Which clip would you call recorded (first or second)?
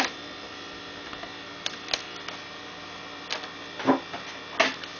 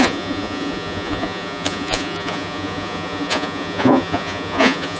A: first